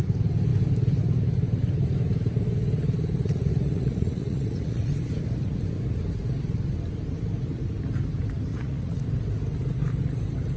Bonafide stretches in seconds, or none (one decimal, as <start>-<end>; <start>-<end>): 0.0-3.2; 4.9-8.5; 9.0-10.6